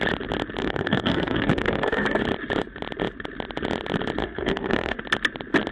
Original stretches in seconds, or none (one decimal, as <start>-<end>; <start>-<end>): 0.0-0.6; 2.2-4.2; 5.0-5.7